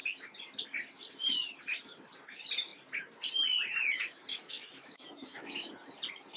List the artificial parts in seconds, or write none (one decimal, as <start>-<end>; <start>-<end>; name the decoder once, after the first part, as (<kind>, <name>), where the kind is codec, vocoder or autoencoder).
4.3-5.7 (autoencoder, DAC-VAE)